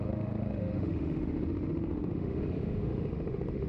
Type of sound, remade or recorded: remade